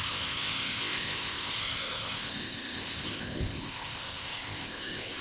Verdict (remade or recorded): remade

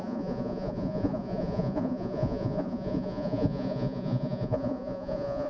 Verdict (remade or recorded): remade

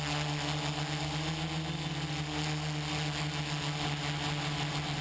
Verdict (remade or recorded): recorded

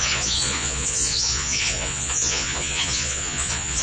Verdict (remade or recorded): remade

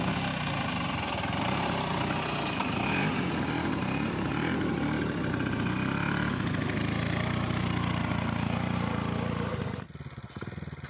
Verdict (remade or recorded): recorded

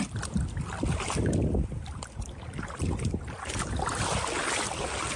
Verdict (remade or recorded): recorded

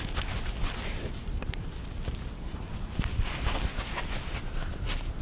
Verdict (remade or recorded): recorded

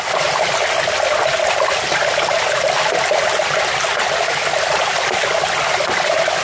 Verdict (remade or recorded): recorded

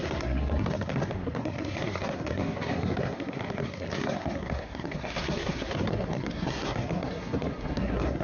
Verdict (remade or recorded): remade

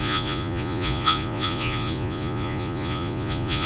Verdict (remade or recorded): remade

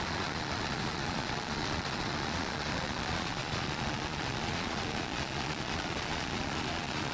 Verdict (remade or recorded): remade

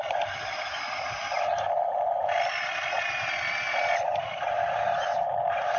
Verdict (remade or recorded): recorded